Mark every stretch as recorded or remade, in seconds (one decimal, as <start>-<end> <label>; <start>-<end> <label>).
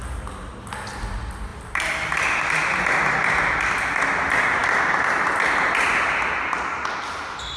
0.0-7.6 recorded